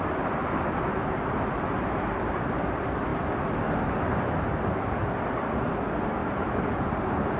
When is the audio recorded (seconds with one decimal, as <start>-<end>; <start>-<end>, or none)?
0.0-7.4